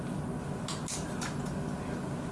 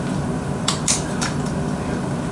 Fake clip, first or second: second